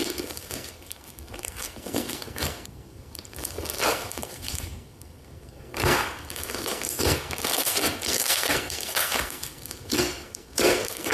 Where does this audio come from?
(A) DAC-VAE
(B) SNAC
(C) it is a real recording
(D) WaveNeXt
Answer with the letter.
B